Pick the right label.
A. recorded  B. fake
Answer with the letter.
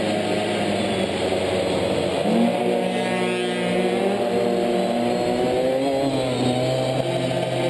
A